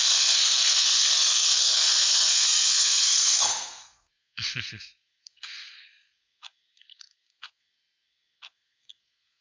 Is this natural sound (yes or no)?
no